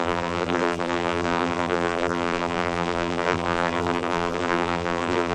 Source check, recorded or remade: remade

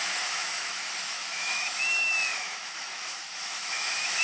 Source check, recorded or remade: remade